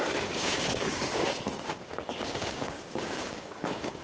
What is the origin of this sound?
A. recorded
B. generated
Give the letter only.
B